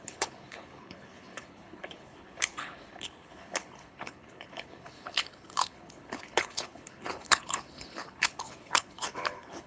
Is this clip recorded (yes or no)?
no